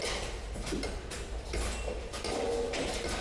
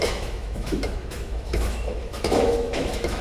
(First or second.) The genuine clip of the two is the first